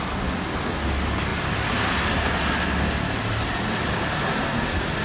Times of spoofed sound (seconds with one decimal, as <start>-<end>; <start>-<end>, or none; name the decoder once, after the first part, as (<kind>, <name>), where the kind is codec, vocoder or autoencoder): none